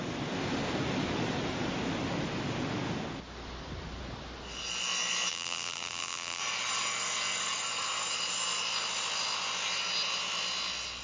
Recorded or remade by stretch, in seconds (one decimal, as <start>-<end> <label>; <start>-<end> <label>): 0.0-5.3 recorded; 5.3-6.4 remade; 6.4-11.0 recorded